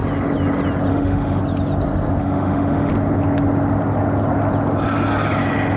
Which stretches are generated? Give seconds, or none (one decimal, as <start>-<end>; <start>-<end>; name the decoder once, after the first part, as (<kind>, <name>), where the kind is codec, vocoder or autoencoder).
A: 0.9-1.4 (autoencoder, DAC-VAE); 2.2-2.9